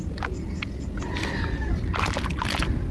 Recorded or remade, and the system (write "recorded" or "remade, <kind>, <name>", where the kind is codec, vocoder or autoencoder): recorded